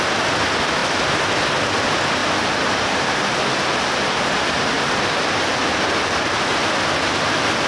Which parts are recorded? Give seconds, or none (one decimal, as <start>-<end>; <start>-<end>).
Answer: 0.0-7.7